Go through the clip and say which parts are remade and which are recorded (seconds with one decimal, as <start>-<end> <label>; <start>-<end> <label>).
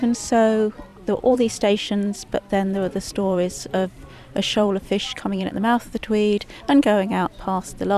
0.0-0.9 recorded; 0.9-5.5 remade; 5.5-8.0 recorded